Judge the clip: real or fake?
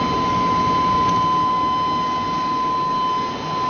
real